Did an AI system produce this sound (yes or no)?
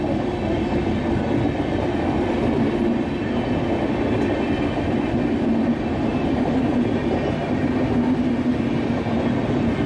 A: no